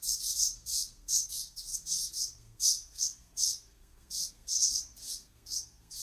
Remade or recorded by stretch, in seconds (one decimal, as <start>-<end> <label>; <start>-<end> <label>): 0.0-6.0 remade